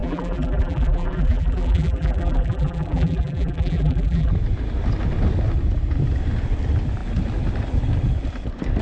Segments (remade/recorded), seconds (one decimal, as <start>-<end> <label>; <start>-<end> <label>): 0.0-4.3 remade; 4.3-8.8 recorded